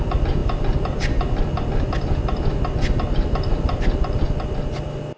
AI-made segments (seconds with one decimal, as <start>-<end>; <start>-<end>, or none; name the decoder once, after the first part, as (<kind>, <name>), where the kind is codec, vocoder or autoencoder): none